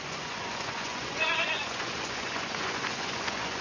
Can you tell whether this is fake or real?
fake